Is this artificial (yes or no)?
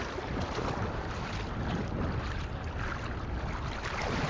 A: no